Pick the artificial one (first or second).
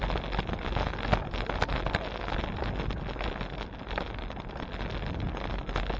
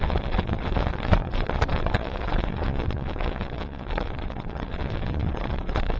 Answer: second